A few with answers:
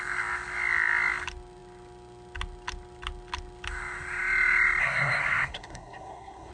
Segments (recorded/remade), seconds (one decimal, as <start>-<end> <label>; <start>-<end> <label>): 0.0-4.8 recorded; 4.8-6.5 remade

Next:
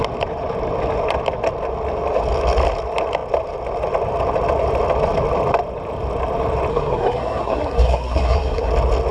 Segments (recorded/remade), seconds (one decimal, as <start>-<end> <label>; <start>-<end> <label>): 0.0-6.7 recorded; 6.7-8.7 remade; 8.7-9.1 recorded

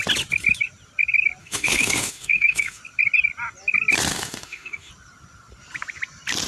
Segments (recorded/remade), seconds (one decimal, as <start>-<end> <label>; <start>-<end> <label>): 0.0-1.4 recorded; 1.4-2.8 remade; 2.8-4.1 recorded; 4.1-4.9 remade; 4.9-6.5 recorded

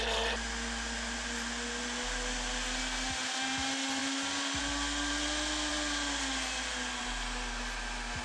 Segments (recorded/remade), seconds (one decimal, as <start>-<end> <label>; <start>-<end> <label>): 0.0-8.2 recorded

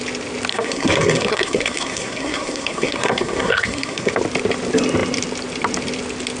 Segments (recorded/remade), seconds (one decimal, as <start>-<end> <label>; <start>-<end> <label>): 0.0-0.5 recorded; 0.5-4.1 remade; 4.1-6.4 recorded